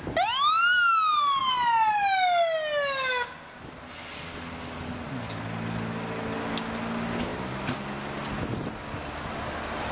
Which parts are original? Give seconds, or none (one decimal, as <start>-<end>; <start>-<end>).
0.0-9.9